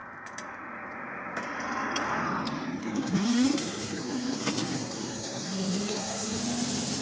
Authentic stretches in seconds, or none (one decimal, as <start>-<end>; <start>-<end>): 0.0-2.8; 6.4-7.0